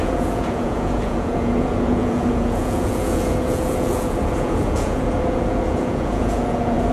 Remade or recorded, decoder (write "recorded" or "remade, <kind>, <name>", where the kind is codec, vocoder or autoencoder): remade, vocoder, Vocos